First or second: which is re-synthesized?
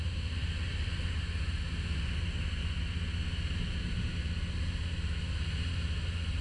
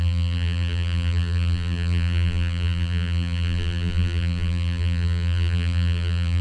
second